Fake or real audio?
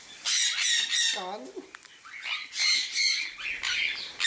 real